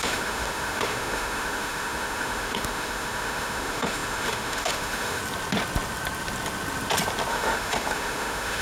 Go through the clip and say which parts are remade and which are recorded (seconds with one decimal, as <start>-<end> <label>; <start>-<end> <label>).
0.0-5.2 remade; 5.2-7.3 recorded; 7.3-8.6 remade

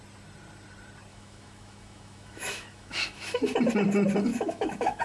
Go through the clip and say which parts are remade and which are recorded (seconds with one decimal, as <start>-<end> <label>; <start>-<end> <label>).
0.0-1.1 recorded; 1.1-3.4 remade; 3.4-4.3 recorded; 4.3-5.0 remade

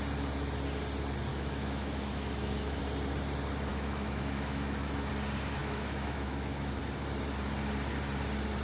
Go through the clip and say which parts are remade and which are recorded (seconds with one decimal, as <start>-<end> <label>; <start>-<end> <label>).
0.0-1.3 recorded; 1.3-2.8 remade; 2.8-3.7 recorded; 3.7-5.1 remade; 5.1-5.6 recorded; 5.6-6.8 remade; 6.8-8.6 recorded

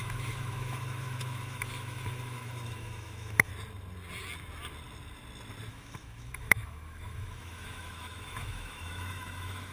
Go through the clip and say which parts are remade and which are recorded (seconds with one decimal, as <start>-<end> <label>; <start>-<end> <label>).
0.0-3.5 remade; 3.5-5.7 recorded; 5.7-9.7 remade

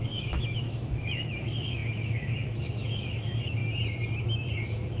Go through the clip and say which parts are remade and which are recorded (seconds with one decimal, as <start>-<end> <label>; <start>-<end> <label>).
0.0-3.6 remade; 3.6-4.2 recorded; 4.2-5.0 remade

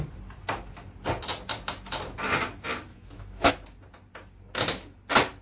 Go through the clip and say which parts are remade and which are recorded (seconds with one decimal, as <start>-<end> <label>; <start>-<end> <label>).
0.0-2.9 recorded; 2.9-3.5 remade; 3.5-5.4 recorded